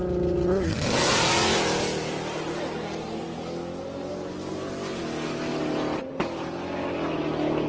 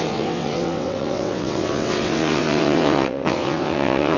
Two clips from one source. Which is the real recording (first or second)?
first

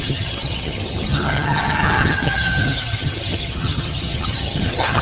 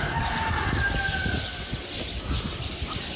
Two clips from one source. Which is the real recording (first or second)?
second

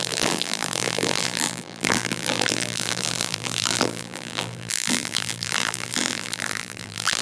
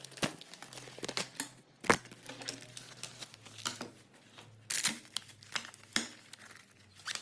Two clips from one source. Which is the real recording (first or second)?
second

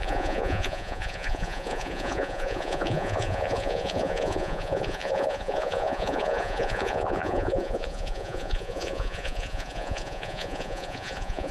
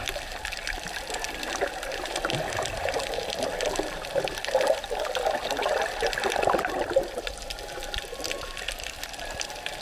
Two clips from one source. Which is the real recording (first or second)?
second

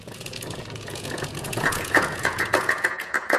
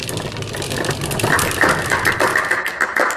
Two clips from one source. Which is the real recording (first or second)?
second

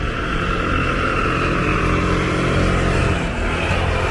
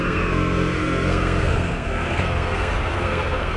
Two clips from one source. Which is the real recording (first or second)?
first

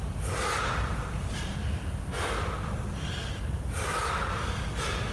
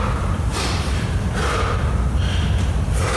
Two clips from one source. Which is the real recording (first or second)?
first